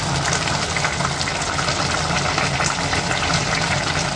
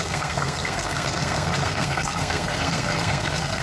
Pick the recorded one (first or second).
first